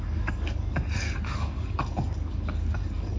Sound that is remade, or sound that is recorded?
remade